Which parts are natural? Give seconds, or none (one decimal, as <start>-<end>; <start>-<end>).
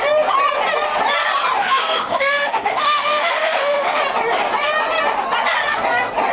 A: 0.0-1.6; 4.0-6.3